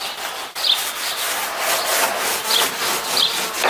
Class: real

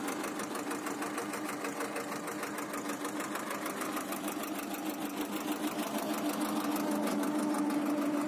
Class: real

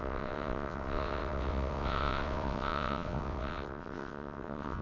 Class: fake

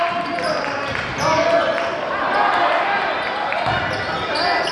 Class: real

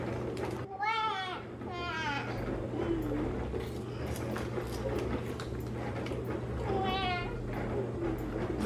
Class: real